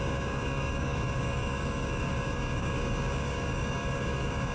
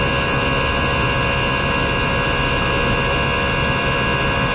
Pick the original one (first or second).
second